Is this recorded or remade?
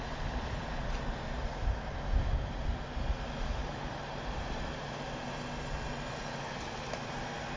recorded